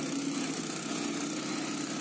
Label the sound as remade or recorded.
recorded